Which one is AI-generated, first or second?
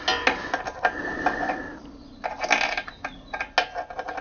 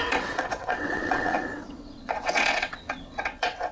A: second